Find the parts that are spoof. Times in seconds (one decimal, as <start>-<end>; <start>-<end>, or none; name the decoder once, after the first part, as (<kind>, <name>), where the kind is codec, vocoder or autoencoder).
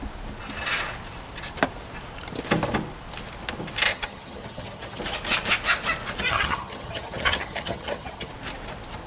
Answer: 3.9-5.0 (vocoder, HiFi-GAN); 6.3-8.3